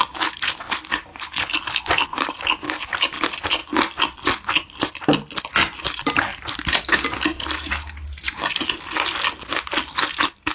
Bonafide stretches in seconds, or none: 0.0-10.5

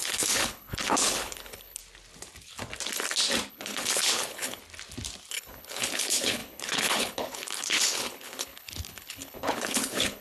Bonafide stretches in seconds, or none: 1.8-3.5; 4.6-5.3

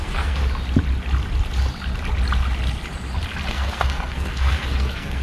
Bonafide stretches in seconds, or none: 0.4-3.5

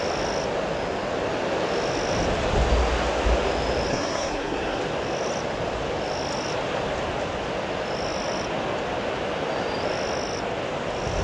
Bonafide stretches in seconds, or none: 0.0-3.9; 4.8-11.2

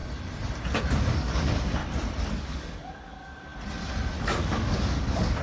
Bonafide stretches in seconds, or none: 0.0-0.8; 1.8-2.4; 3.5-4.2

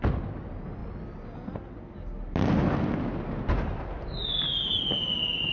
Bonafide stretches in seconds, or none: 0.0-5.5